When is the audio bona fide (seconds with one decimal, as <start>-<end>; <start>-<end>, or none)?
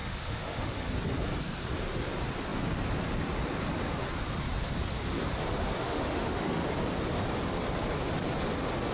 0.9-5.8; 6.7-8.9